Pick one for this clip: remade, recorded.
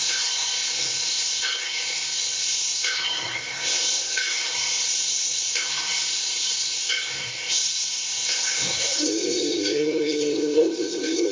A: remade